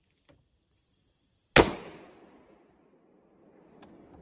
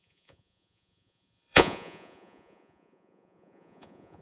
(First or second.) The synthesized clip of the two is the second